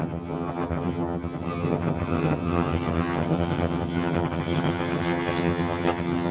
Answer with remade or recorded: remade